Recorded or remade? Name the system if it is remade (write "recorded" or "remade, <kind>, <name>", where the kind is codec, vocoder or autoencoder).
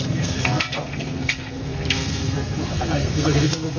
remade, codec, SNAC